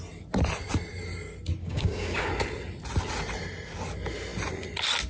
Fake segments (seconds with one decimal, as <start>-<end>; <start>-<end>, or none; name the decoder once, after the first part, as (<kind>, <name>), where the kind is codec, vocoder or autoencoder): 1.6-2.3 (codec, DAC)